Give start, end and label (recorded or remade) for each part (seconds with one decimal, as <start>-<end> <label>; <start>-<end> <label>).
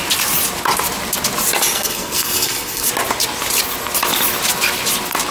0.0-1.7 recorded; 1.7-2.9 remade; 2.9-5.3 recorded